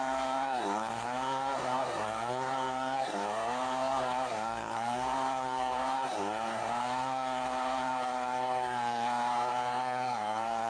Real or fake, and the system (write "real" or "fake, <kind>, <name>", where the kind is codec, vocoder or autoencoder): fake, codec, SNAC